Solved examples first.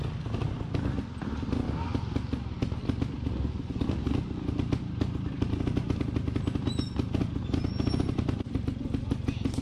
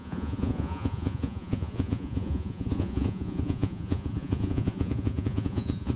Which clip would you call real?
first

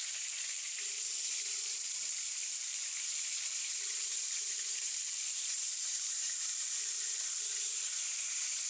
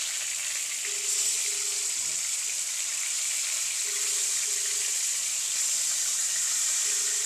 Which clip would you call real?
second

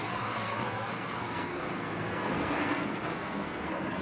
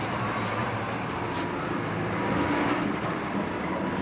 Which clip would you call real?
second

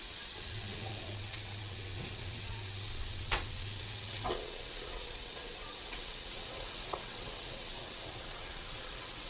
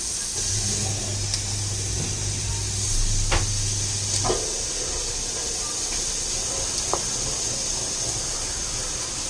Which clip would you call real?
second